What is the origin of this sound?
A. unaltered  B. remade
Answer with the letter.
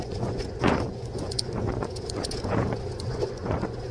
B